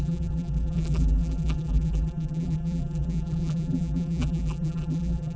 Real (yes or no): no